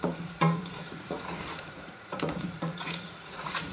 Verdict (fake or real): fake